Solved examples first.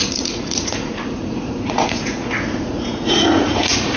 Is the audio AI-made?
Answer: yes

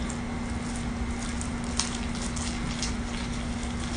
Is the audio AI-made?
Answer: no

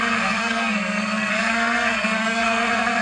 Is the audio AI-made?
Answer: yes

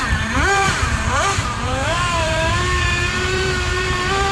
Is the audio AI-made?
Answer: yes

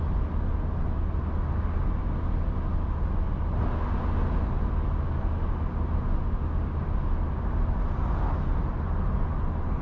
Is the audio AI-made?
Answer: no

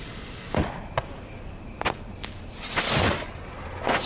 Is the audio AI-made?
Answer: no